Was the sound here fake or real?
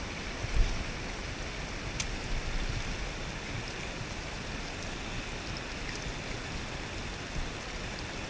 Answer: real